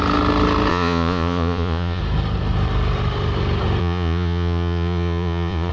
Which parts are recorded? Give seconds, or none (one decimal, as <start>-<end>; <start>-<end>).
0.0-0.7; 2.0-3.8